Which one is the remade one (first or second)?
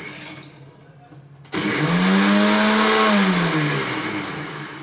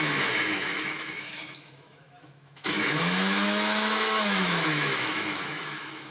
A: second